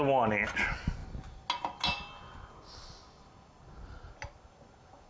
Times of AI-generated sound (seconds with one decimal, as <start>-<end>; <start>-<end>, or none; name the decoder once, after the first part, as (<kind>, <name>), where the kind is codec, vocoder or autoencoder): none